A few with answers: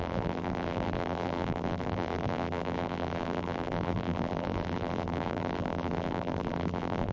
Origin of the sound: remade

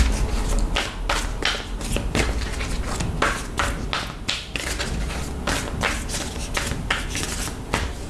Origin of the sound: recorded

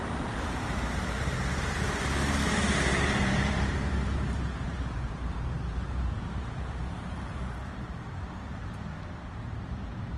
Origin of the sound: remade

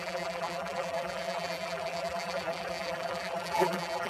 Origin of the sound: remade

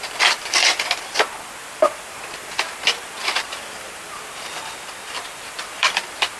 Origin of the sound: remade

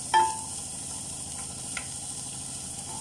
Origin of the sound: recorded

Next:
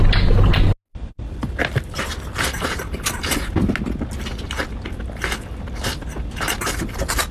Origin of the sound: recorded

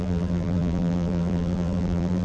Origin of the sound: remade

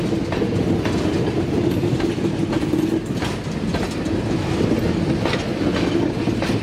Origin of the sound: recorded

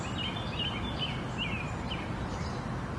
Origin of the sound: recorded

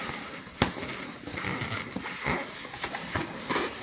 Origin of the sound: recorded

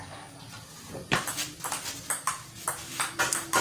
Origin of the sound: recorded